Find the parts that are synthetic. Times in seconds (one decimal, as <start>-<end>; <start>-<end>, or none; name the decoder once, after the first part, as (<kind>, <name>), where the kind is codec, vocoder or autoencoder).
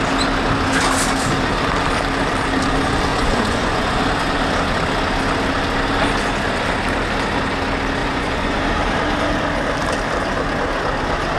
3.1-4.0 (vocoder, Vocos); 8.0-8.6